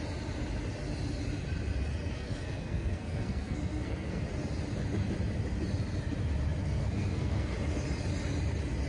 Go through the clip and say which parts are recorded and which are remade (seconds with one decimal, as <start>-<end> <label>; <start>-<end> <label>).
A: 0.0-2.1 recorded; 2.1-4.2 remade; 4.2-6.6 recorded; 6.6-7.5 remade; 7.5-8.9 recorded